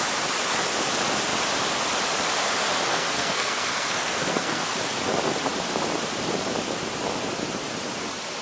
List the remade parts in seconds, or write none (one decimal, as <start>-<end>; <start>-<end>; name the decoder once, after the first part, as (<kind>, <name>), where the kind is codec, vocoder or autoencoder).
2.9-4.7 (codec, SNAC)